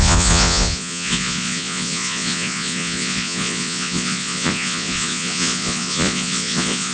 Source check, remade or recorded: remade